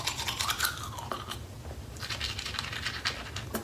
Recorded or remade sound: recorded